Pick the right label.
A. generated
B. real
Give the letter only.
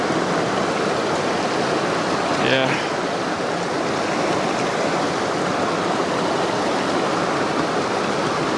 B